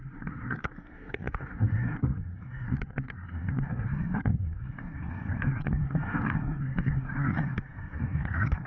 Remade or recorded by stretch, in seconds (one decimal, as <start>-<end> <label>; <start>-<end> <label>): 0.0-8.7 remade